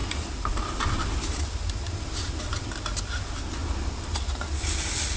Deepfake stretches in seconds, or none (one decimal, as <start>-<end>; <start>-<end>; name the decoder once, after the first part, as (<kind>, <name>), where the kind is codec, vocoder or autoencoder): 0.0-1.6 (vocoder, BigVGAN v2)